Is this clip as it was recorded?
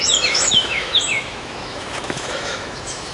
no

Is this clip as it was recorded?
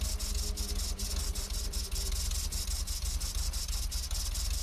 yes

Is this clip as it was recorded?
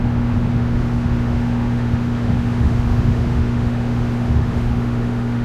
no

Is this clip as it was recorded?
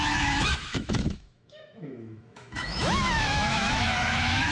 no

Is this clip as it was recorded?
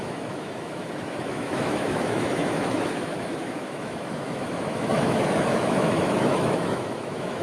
no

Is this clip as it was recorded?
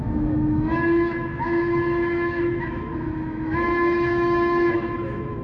no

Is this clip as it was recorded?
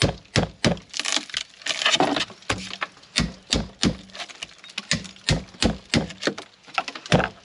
yes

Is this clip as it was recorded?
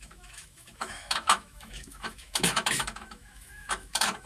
no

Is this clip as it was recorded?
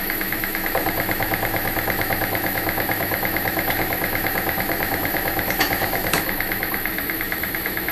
no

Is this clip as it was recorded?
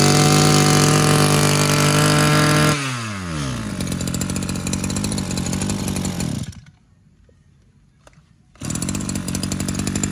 yes